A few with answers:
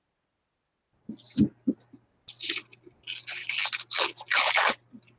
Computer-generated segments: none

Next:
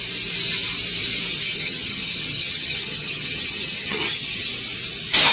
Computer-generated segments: 1.3-4.5 (vocoder, HiFi-GAN)

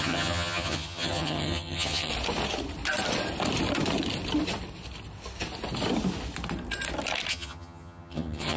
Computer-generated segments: 0.0-2.1 (vocoder, HiFi-GAN); 7.3-8.6